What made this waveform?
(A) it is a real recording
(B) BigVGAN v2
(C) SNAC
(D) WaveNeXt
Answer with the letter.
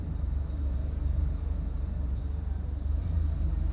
B